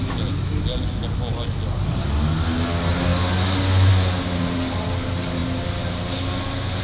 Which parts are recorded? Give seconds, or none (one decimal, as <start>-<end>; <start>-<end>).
0.0-6.8

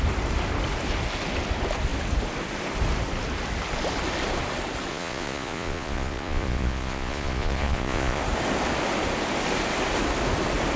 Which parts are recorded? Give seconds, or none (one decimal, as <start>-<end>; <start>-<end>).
0.0-4.9; 8.2-10.8

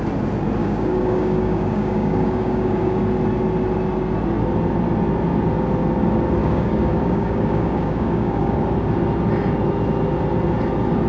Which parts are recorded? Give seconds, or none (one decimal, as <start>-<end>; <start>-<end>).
0.0-0.6; 3.0-6.4; 8.6-11.1

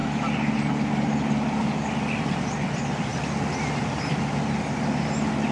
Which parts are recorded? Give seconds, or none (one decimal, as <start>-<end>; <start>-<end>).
0.0-5.5

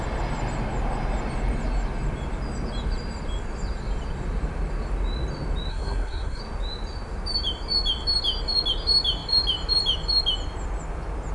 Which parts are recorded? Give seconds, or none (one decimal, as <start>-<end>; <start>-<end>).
0.0-5.7; 6.4-11.3